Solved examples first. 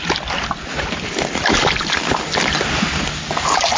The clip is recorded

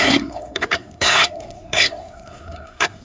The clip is remade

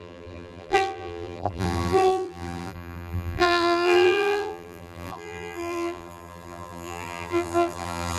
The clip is remade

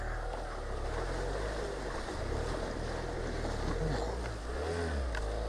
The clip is recorded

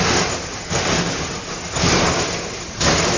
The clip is recorded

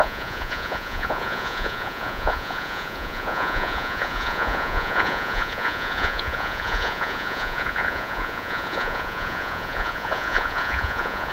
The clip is remade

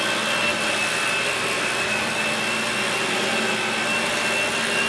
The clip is recorded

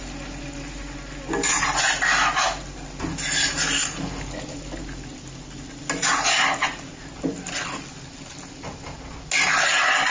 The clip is recorded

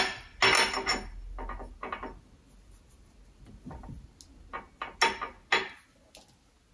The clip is recorded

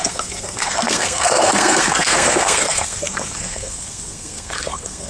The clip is remade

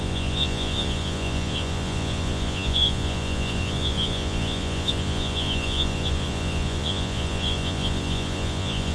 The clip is remade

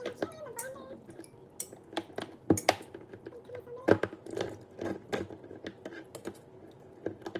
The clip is recorded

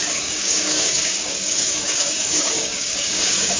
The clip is remade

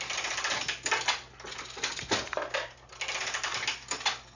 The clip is recorded